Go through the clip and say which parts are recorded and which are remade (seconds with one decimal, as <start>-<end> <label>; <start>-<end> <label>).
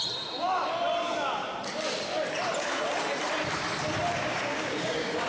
0.0-4.3 recorded; 4.3-5.3 remade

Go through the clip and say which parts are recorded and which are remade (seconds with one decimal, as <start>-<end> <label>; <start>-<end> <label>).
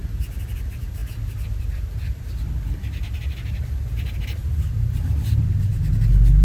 0.0-6.4 recorded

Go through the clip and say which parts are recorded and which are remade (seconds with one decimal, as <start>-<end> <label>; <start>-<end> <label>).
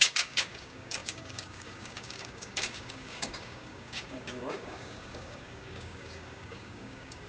0.0-7.3 remade